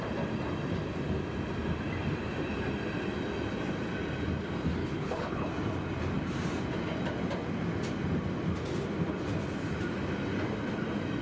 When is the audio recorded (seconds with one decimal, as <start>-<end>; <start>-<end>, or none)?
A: 0.0-4.8; 5.5-11.2